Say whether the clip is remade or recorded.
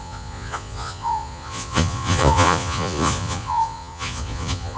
remade